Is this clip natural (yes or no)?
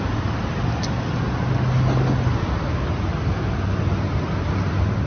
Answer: yes